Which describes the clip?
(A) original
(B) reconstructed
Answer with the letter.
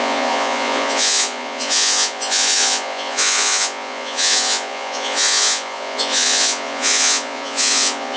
B